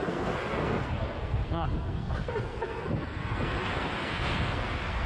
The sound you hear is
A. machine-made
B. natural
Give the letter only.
A